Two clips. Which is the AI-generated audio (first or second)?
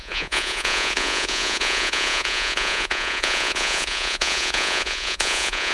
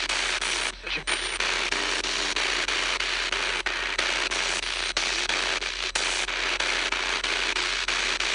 first